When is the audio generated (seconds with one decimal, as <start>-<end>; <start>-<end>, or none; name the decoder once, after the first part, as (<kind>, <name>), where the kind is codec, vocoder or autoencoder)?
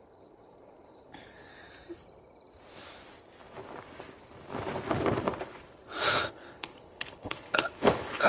0.0-1.5 (codec, HILCodec); 6.0-8.3